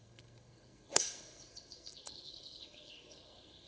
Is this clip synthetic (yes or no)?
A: yes